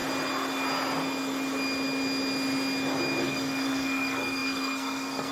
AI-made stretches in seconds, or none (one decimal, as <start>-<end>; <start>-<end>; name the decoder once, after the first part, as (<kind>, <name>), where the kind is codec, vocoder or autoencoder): 3.2-5.3 (codec, SNAC)